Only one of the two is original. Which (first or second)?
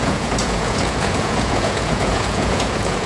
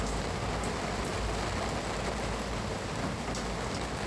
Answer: second